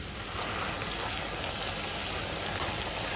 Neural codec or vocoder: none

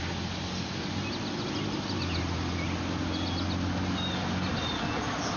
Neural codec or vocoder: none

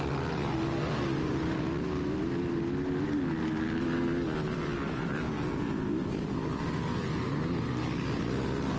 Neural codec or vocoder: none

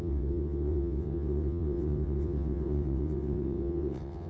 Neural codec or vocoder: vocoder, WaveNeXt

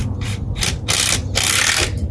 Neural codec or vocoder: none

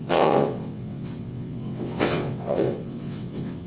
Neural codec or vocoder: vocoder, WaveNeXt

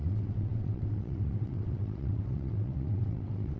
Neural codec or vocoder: vocoder, WaveNeXt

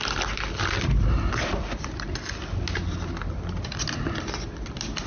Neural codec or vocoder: none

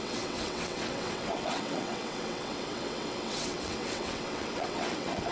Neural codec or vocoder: vocoder, WaveNeXt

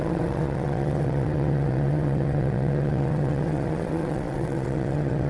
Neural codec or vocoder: vocoder, WaveNeXt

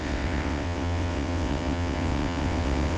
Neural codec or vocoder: vocoder, WaveNeXt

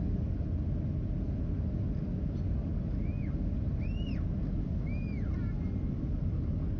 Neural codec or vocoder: none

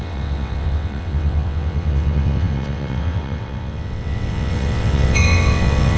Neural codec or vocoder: vocoder, WaveNeXt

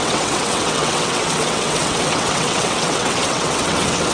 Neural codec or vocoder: vocoder, WaveNeXt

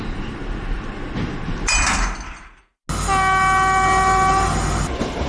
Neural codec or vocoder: none